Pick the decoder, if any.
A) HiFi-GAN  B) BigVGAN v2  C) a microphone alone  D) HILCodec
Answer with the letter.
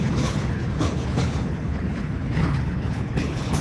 D